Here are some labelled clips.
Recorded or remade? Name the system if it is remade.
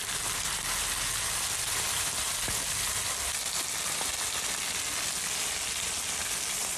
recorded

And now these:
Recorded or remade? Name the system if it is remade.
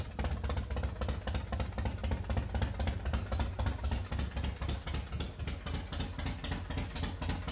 recorded